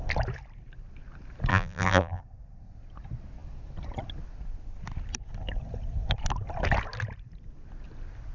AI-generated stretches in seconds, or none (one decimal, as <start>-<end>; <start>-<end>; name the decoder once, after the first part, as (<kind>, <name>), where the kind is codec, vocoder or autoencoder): 1.5-2.2 (vocoder, BigVGAN v2)